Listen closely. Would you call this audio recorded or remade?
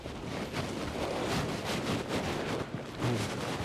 recorded